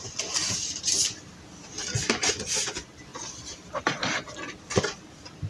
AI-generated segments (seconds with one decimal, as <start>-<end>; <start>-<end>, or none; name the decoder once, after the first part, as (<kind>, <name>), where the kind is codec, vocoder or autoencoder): 0.4-1.0 (vocoder, BigVGAN v2); 3.1-3.8